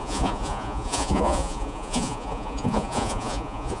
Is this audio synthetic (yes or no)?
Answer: yes